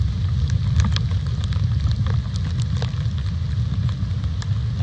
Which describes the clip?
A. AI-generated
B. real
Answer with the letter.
B